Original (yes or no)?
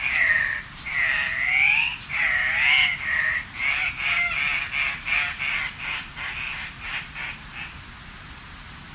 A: yes